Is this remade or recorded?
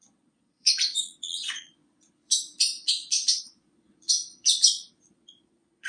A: remade